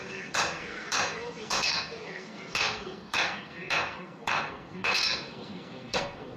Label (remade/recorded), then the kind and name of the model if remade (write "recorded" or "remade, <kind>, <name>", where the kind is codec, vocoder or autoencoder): remade, codec, SNAC